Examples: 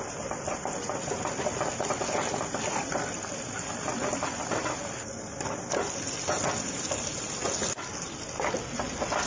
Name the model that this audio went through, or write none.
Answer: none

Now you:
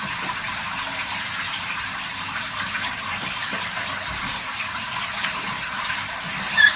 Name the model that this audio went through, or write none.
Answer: vocoder, BigVGAN v2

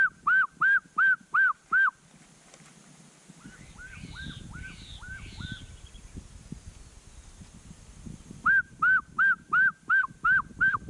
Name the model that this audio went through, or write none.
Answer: none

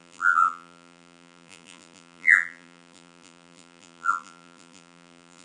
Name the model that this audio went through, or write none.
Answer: vocoder, BigVGAN v2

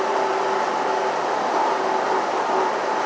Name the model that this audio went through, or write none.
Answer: none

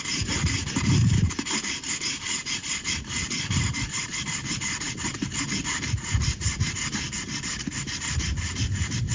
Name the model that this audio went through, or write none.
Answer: vocoder, BigVGAN v2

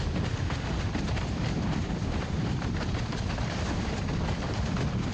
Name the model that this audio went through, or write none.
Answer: vocoder, BigVGAN v2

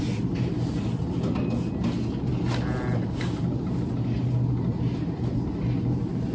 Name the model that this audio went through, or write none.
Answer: none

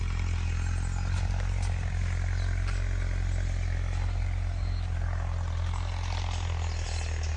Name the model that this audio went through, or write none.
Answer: none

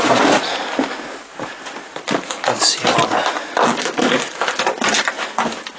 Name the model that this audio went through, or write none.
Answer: none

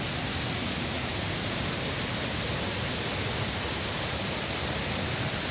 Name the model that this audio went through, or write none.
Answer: none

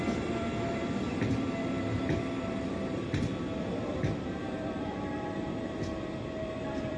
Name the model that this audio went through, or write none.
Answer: vocoder, BigVGAN v2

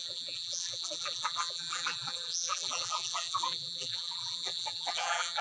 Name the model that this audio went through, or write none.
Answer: vocoder, BigVGAN v2